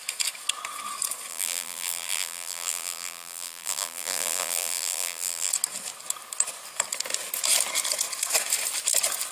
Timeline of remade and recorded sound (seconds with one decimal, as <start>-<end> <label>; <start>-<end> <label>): 0.0-1.3 recorded; 1.3-5.5 remade; 5.5-9.3 recorded